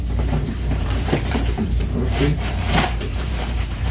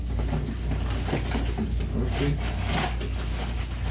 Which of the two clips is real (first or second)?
second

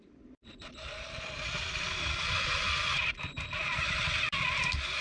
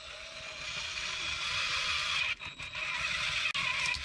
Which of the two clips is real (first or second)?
second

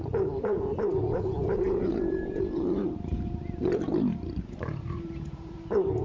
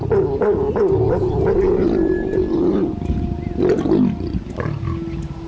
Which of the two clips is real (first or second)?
second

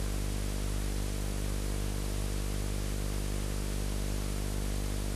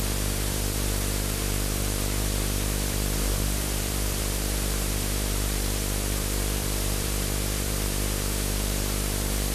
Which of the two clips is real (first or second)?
first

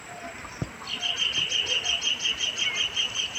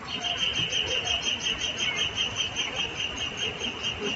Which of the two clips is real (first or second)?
first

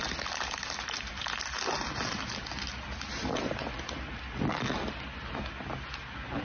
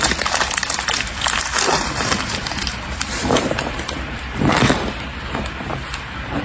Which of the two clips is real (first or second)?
first